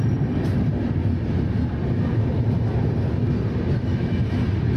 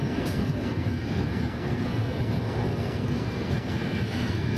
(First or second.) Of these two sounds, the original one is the first